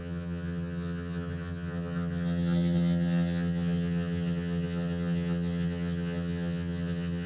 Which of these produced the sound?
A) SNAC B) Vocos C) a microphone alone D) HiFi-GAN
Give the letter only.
D